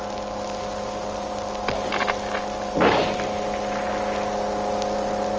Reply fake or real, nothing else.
real